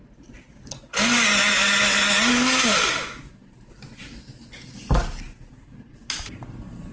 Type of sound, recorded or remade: recorded